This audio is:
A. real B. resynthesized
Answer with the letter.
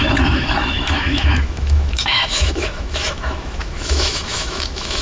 B